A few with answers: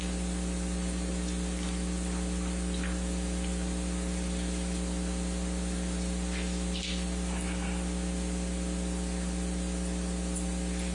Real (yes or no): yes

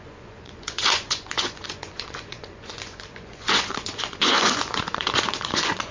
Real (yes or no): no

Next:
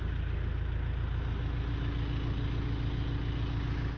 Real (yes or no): yes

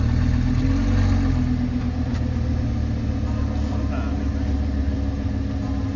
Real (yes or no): yes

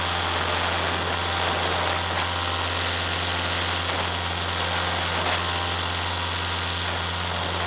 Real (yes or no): yes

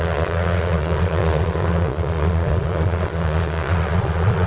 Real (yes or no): no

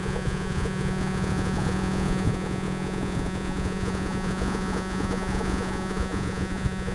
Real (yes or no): no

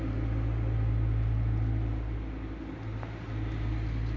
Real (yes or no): yes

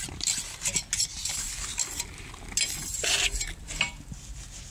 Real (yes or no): yes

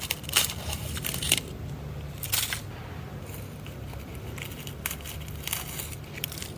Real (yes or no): yes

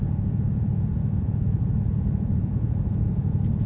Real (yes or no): no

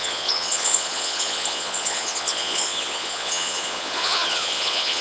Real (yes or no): no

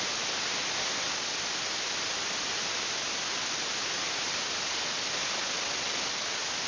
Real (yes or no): yes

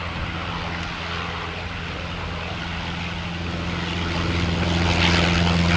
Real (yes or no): yes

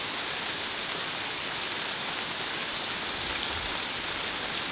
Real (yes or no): yes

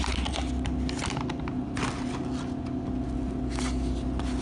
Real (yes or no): yes